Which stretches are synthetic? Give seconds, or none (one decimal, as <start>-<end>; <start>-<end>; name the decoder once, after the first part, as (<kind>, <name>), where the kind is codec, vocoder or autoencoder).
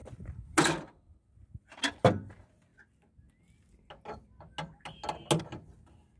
none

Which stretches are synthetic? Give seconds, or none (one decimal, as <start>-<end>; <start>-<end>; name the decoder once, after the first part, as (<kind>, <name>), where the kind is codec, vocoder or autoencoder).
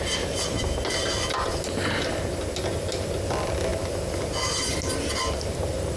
none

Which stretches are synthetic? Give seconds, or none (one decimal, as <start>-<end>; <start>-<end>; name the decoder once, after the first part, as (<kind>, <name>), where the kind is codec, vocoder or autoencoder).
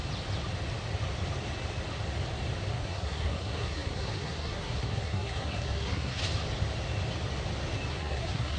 2.7-6.2 (codec, SNAC); 7.9-8.6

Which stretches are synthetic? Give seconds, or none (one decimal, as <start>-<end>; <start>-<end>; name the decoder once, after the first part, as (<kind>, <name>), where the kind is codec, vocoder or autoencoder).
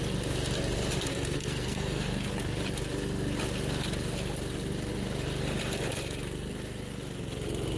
1.1-2.3 (codec, SNAC)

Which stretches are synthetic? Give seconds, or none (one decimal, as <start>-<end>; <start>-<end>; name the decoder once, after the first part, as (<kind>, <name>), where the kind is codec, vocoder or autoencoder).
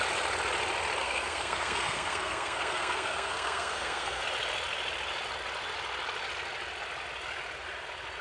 1.0-4.2 (codec, SNAC)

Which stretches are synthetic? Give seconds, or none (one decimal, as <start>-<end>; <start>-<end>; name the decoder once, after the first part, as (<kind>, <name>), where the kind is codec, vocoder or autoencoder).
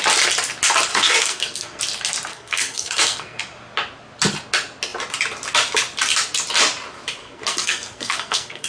0.9-1.8 (codec, SNAC); 2.3-3.4; 7.2-8.7